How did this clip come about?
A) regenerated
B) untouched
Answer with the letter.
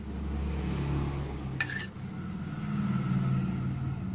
B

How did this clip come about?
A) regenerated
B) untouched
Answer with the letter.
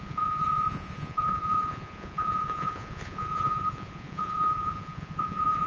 A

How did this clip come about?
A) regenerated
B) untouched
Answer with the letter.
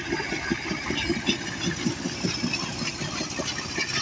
B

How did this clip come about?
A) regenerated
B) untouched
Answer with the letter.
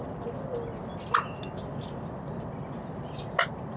B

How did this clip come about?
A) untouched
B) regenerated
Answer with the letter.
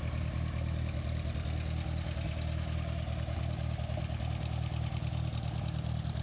A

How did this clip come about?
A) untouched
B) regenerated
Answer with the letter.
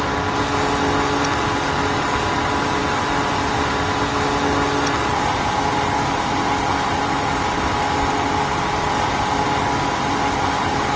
A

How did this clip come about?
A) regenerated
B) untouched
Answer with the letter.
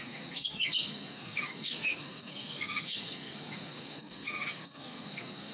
A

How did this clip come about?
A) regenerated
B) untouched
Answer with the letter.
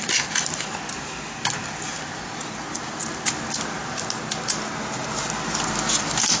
B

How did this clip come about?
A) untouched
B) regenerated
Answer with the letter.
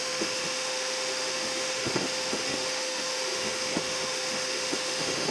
B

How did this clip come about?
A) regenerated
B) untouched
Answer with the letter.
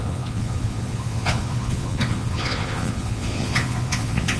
A